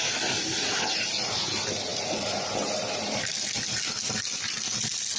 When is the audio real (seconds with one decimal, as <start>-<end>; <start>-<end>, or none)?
0.0-5.2